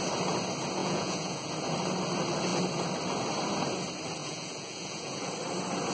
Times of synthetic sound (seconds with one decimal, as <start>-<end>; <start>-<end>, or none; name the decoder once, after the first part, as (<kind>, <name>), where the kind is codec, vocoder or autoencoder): 0.8-1.5 (vocoder, Vocos); 4.2-5.3